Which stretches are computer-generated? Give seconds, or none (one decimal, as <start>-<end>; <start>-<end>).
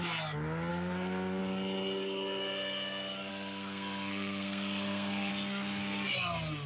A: 0.7-1.4; 3.3-5.3